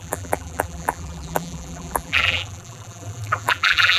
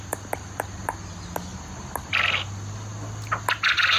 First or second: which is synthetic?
first